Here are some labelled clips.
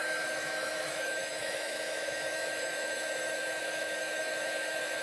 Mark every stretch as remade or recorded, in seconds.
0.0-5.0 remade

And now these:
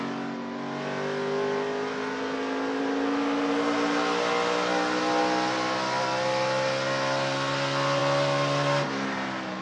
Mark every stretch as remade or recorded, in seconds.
0.0-9.6 recorded